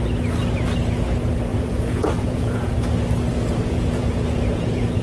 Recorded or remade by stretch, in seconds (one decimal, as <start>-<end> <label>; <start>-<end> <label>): 0.0-1.5 recorded; 1.5-2.7 remade; 2.7-3.3 recorded; 3.3-5.0 remade

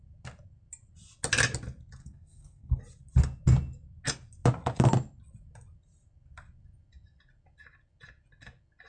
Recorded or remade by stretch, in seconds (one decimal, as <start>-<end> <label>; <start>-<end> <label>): 0.0-2.0 recorded; 2.0-2.8 remade; 2.8-8.9 recorded

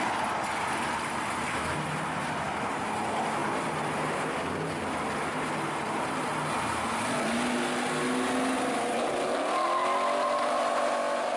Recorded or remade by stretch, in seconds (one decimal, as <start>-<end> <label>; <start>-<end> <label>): 0.0-3.4 recorded; 3.4-5.0 remade; 5.0-11.4 recorded